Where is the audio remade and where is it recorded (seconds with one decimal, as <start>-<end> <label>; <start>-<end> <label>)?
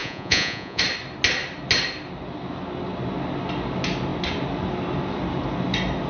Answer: 0.0-0.8 remade; 0.8-6.1 recorded